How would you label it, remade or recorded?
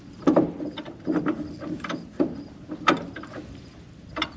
recorded